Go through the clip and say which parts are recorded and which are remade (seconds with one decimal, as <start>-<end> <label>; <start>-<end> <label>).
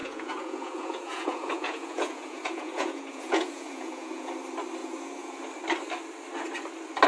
0.0-4.3 remade; 4.3-4.8 recorded; 4.8-5.4 remade; 5.4-7.1 recorded